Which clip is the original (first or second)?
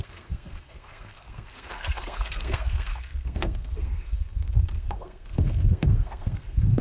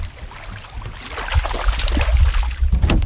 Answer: second